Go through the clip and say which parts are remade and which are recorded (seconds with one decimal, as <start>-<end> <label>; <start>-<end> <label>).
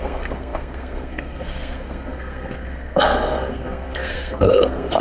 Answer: 0.0-5.0 remade